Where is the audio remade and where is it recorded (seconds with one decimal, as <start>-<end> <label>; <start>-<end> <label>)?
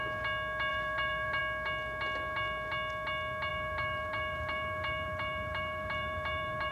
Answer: 0.0-0.7 recorded; 0.7-1.4 remade; 1.4-3.5 recorded; 3.5-6.7 remade